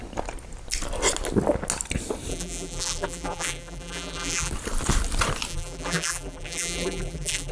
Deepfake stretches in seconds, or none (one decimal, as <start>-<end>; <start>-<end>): 2.3-4.5; 5.5-7.5